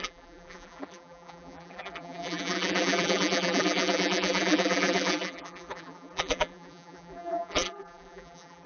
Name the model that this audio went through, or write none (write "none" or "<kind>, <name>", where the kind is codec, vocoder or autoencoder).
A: vocoder, BigVGAN v2